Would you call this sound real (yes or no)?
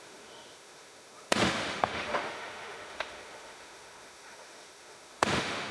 no